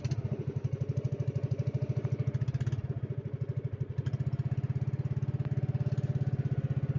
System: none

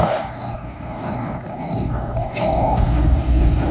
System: codec, DAC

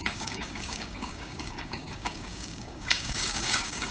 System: codec, DAC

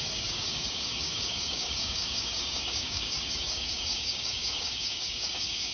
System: codec, DAC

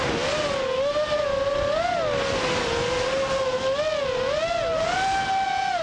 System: none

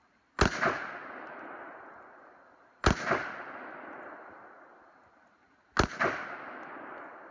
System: none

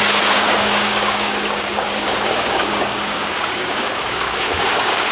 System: codec, DAC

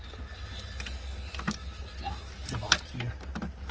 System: none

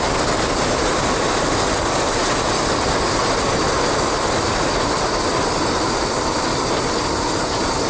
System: none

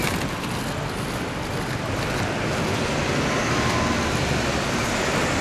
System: none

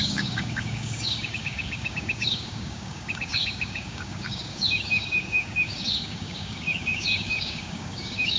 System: codec, DAC